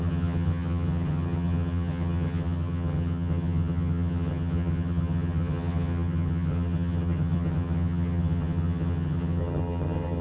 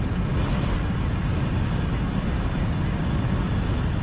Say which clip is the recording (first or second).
second